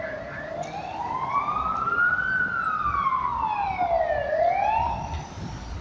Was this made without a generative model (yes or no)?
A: yes